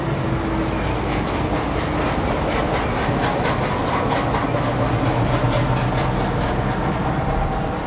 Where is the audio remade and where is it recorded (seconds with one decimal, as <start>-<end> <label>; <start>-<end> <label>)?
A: 0.0-0.9 recorded; 0.9-1.5 remade; 1.5-7.9 recorded